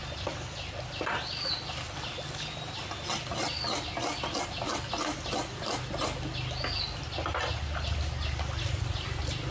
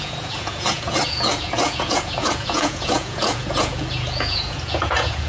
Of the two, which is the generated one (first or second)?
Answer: second